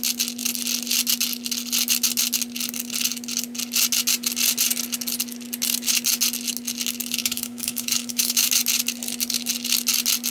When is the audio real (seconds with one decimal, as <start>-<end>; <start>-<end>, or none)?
0.0-7.2; 8.5-10.3